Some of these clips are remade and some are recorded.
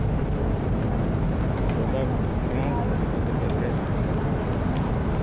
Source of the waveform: recorded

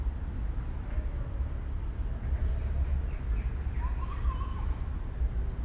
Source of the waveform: recorded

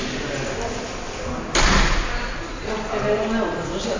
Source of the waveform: recorded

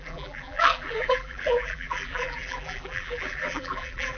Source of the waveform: remade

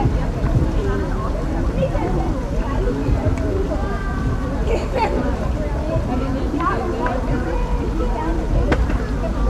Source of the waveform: remade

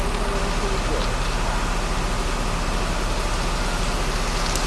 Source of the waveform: recorded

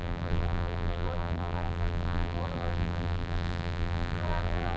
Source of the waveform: remade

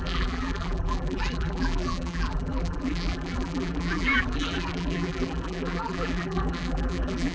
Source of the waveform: remade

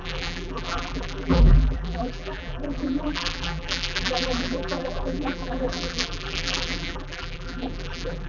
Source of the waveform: remade